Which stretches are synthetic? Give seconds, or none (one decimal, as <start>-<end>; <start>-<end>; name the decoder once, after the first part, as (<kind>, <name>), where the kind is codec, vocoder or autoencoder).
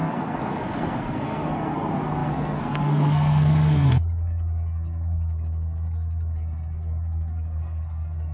0.0-8.3 (codec, SNAC)